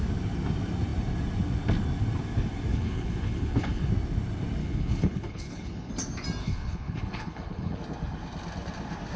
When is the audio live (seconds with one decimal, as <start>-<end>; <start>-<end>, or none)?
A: 0.0-2.7; 3.9-4.6; 5.9-6.4; 7.8-9.2